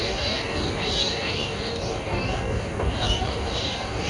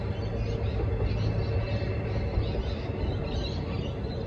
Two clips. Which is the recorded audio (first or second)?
second